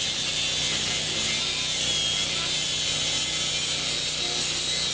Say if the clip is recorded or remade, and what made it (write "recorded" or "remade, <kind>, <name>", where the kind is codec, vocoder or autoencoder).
recorded